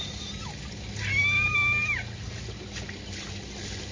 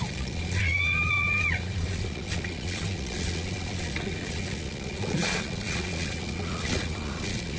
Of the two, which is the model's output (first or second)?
second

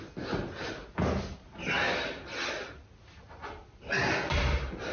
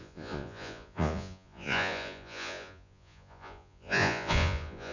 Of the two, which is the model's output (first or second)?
second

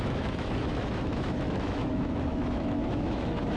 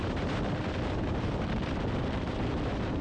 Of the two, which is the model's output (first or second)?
first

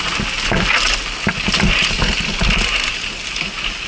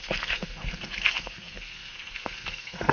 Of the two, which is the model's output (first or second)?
second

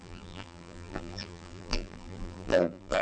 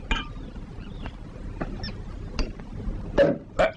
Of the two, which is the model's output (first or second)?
first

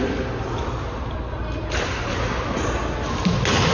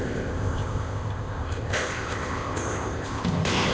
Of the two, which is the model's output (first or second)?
second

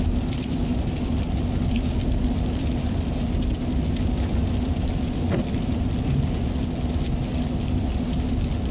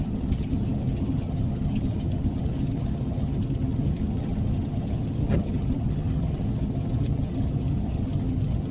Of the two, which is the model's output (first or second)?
second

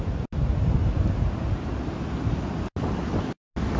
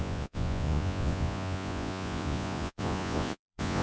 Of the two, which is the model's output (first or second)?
second